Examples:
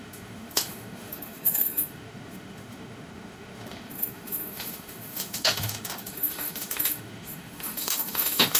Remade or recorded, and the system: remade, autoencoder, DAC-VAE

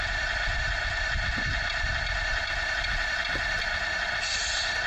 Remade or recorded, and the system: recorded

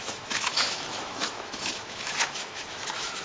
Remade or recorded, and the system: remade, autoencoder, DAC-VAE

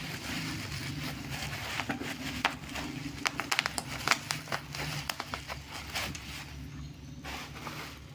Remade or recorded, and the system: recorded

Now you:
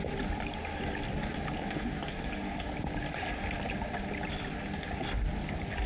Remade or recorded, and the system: recorded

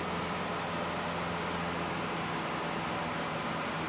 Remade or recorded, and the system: recorded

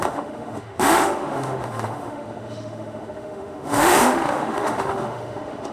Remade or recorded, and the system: remade, autoencoder, DAC-VAE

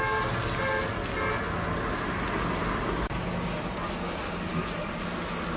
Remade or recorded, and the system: recorded